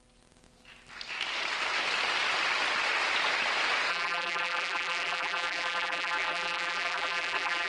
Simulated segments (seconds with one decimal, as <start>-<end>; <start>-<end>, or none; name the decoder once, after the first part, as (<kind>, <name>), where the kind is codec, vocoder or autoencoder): 3.9-7.7 (vocoder, BigVGAN v2)